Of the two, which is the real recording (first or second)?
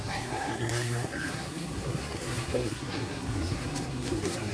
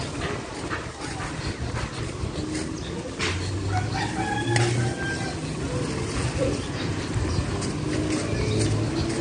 second